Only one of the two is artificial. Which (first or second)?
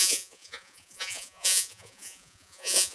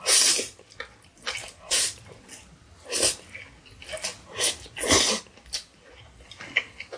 first